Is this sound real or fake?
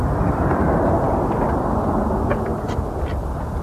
real